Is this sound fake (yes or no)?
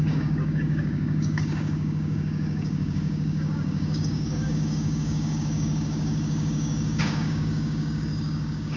yes